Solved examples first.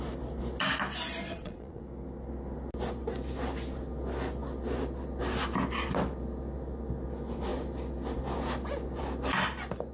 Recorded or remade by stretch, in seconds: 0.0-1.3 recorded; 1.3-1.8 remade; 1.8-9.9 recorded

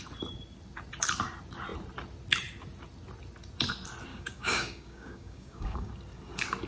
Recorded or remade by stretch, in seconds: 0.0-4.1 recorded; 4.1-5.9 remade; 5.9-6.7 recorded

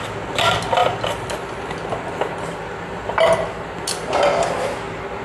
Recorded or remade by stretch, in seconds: 0.0-5.2 recorded

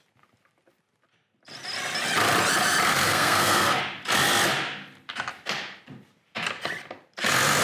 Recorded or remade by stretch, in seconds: 0.0-2.9 recorded; 2.9-3.8 remade; 3.8-7.6 recorded

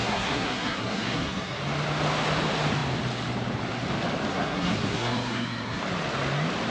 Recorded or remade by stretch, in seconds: 0.0-1.6 remade; 1.6-4.3 recorded; 4.3-5.8 remade; 5.8-6.7 recorded

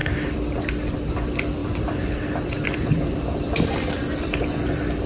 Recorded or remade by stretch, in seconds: 0.0-1.6 recorded; 1.6-4.6 remade; 4.6-5.1 recorded